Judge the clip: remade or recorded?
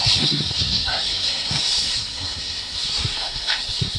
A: remade